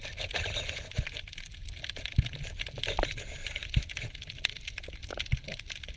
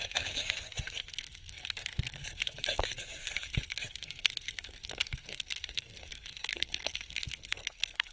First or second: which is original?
first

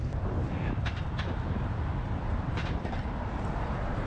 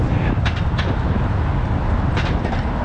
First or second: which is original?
second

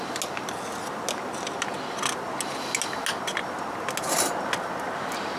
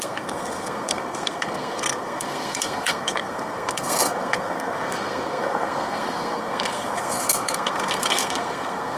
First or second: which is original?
first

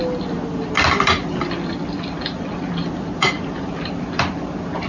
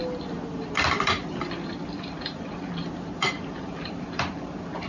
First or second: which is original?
first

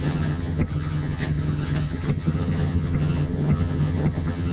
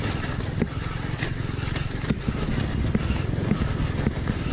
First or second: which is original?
second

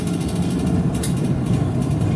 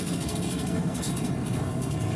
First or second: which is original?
first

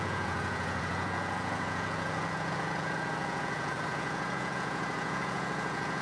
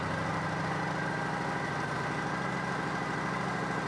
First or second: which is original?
second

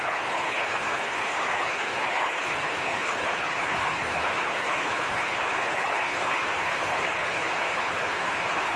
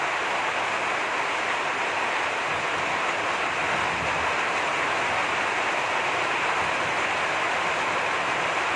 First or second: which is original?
second